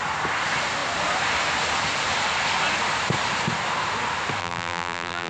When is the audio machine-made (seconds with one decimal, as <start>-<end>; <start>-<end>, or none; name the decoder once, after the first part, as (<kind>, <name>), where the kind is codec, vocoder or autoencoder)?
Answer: 4.4-5.3 (vocoder, BigVGAN v2)